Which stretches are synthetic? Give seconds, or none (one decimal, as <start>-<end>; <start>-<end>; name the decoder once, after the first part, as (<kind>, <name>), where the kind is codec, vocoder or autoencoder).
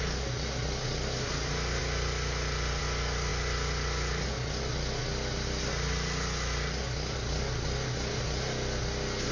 none